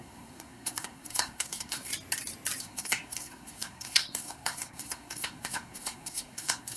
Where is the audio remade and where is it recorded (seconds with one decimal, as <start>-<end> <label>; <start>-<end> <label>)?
0.0-1.9 remade; 1.9-2.6 recorded; 2.6-6.8 remade